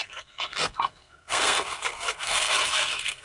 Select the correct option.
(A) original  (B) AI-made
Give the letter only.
B